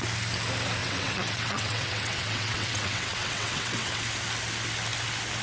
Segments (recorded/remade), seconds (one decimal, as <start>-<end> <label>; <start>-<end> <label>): 0.0-0.8 recorded; 0.8-4.0 remade; 4.0-5.4 recorded